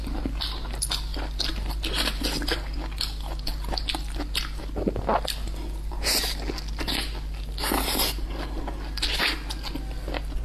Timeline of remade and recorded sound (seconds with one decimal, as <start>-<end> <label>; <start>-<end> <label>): 0.0-10.4 recorded